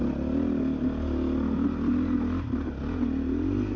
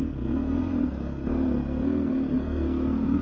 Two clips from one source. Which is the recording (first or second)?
first